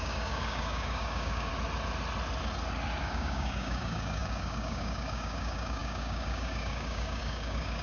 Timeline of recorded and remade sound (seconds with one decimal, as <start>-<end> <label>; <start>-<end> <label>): 0.0-1.5 remade; 1.5-3.0 recorded; 3.0-7.8 remade